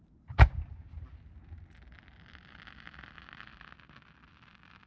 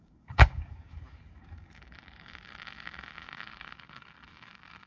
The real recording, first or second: first